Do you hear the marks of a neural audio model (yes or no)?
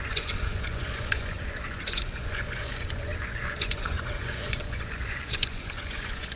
yes